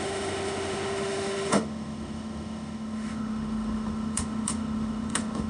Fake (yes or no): yes